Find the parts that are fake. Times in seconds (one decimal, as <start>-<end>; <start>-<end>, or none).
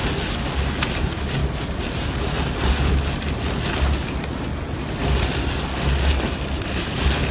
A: none